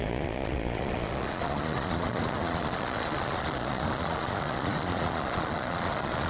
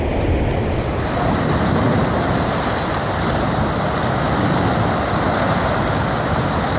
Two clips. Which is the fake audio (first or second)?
first